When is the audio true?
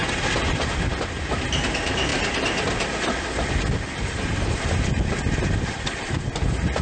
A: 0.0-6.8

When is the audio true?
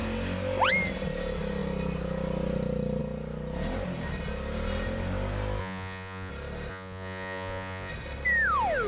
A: 0.0-5.6; 6.3-6.7; 7.9-8.9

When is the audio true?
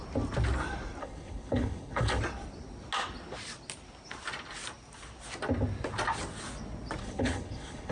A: 0.0-1.0; 2.2-7.0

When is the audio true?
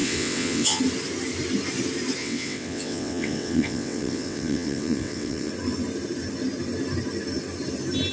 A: 0.8-2.2; 5.5-8.1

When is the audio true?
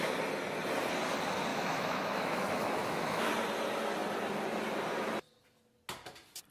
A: 0.0-1.5; 3.3-6.5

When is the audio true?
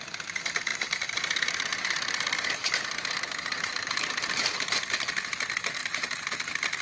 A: 0.0-0.7; 4.8-5.8; 6.3-6.8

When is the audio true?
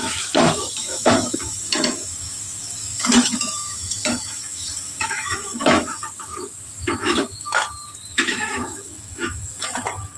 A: 7.6-8.1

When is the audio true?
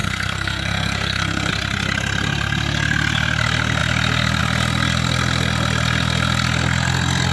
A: 1.5-7.3